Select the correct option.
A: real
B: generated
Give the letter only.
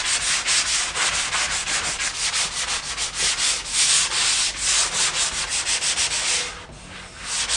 A